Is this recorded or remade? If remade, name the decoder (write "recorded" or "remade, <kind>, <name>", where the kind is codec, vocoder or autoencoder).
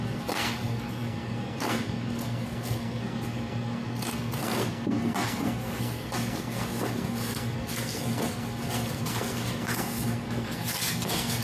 remade, codec, SNAC